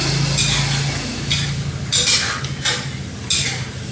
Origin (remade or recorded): recorded